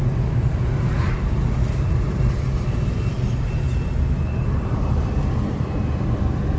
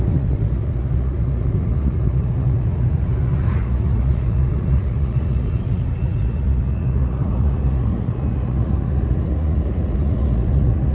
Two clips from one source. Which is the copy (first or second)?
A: second